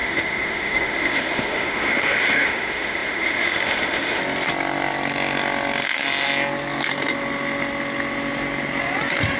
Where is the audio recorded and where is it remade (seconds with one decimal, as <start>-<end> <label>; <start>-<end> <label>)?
0.0-4.2 remade; 4.2-9.4 recorded